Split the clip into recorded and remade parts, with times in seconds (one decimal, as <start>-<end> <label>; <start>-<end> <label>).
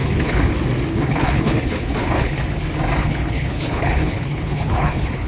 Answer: 0.0-0.5 remade; 0.5-0.9 recorded; 0.9-2.4 remade; 2.4-3.0 recorded; 3.0-5.3 remade